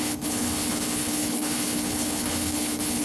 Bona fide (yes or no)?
no